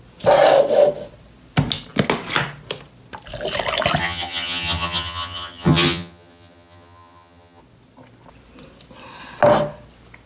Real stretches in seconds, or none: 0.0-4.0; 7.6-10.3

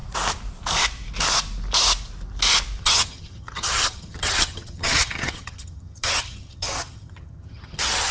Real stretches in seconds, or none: 0.0-2.8

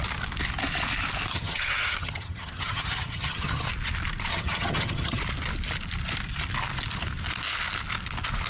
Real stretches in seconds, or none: 0.0-1.3; 3.7-4.3; 5.2-8.5

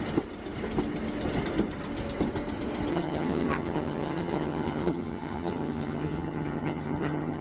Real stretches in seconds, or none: 0.0-2.9

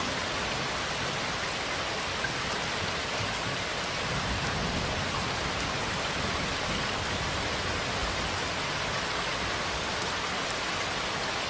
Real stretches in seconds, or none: 0.0-11.5